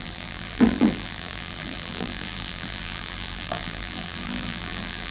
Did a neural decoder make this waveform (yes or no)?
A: yes